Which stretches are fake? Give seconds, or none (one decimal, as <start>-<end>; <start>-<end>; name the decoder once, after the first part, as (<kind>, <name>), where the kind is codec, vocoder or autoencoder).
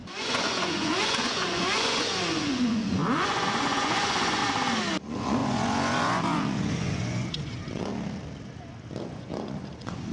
0.0-4.4 (vocoder, Vocos); 5.0-7.9; 9.0-10.1